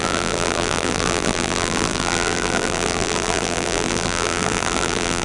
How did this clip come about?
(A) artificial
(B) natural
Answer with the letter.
A